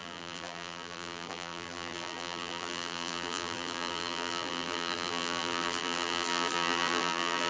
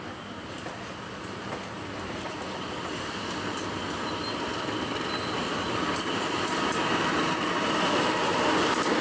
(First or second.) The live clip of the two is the second